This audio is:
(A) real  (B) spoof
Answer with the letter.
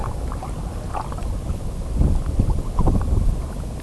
A